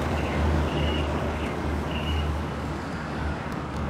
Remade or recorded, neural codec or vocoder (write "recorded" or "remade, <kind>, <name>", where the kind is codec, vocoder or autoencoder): remade, codec, DAC